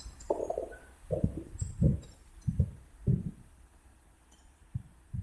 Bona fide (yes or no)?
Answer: no